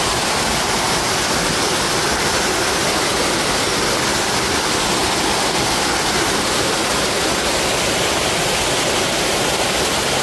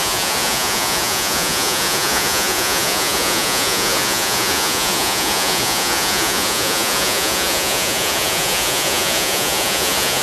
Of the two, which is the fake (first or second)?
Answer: second